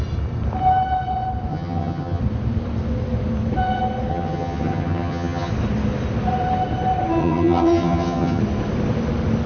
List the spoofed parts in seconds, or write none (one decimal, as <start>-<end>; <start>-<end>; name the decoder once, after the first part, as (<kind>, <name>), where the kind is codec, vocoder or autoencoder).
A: 1.5-2.2 (vocoder, HiFi-GAN); 4.1-5.5; 7.2-8.4